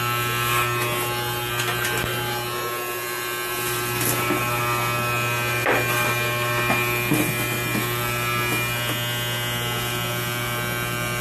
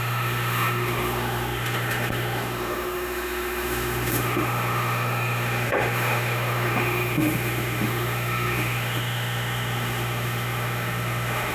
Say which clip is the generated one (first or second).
second